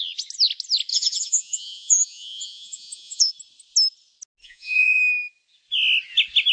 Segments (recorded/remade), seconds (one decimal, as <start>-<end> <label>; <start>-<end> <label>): 0.0-0.9 recorded; 0.9-3.3 remade; 3.3-4.4 recorded; 4.4-5.0 remade; 5.0-6.5 recorded